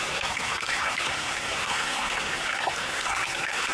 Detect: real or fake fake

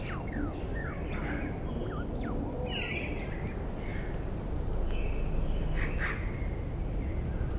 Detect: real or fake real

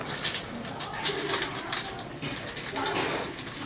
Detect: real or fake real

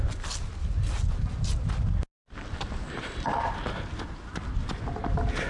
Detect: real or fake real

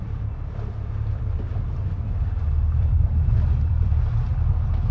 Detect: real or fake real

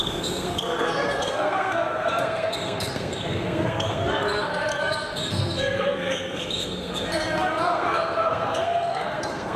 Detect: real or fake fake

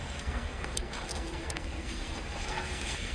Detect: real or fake fake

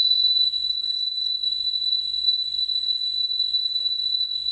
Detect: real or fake fake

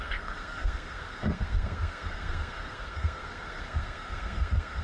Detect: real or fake fake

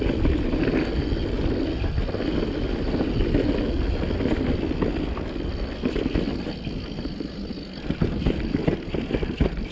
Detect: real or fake real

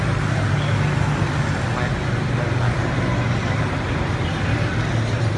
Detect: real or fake real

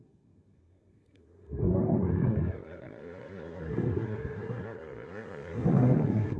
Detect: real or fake fake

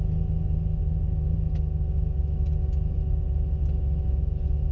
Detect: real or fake real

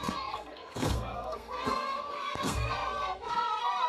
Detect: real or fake fake